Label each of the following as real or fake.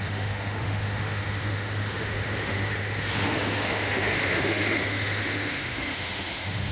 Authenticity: fake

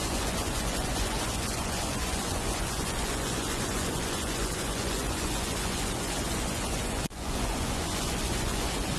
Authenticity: fake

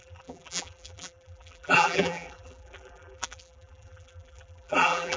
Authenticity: fake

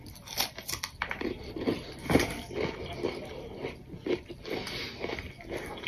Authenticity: real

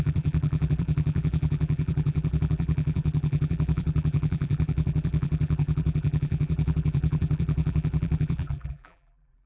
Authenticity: fake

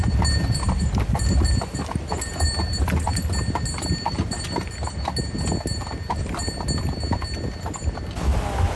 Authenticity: real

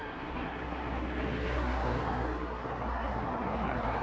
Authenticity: fake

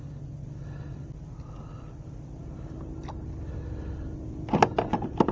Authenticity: real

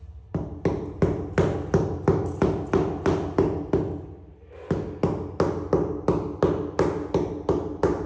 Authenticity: real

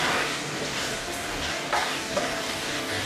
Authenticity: fake